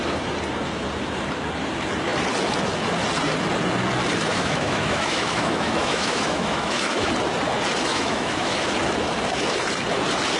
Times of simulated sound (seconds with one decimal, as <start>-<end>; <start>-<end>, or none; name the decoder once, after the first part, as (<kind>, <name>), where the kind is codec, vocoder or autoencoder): 4.3-7.1 (autoencoder, DAC-VAE); 7.9-8.7

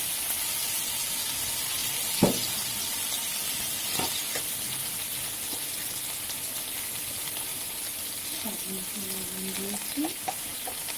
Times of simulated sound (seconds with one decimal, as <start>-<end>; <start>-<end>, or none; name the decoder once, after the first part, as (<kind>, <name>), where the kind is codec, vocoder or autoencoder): none

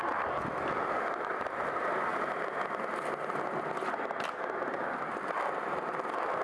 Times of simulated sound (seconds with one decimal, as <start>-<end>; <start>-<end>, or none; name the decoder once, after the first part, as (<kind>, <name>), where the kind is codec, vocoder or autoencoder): none

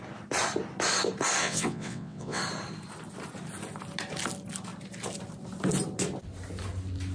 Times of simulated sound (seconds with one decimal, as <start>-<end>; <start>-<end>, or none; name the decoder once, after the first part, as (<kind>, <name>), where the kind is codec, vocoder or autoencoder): 1.4-2.4 (vocoder, WaveNeXt)